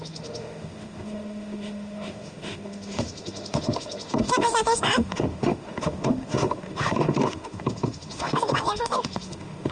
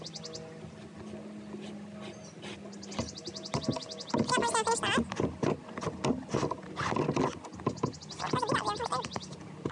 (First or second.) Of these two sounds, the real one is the second